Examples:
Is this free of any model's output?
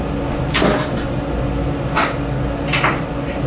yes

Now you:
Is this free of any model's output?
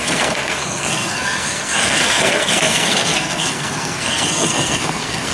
no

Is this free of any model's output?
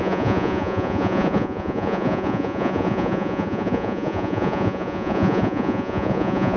no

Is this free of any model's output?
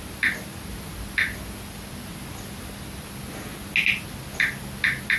yes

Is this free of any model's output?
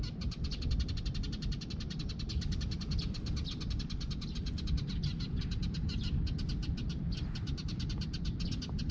yes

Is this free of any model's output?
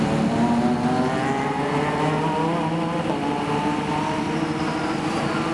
yes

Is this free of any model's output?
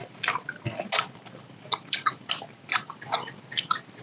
yes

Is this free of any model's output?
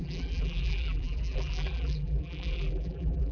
no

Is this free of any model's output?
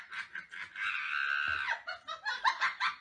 yes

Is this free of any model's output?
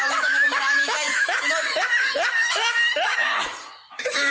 no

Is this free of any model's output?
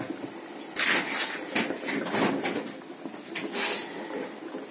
yes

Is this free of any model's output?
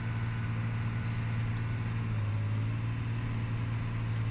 yes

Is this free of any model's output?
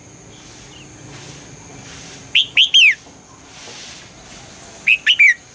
yes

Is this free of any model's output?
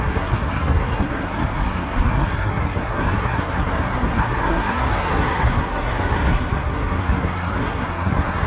no